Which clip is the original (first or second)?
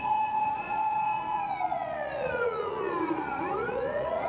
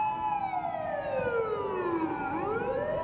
second